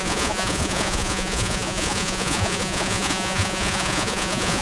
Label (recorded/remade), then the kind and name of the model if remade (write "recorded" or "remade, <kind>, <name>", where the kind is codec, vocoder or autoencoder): remade, vocoder, Vocos